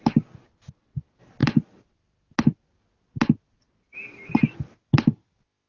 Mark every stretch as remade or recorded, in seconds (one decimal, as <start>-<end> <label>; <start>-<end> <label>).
0.0-5.7 recorded